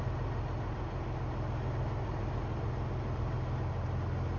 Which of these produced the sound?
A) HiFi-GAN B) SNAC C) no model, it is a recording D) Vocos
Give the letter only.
C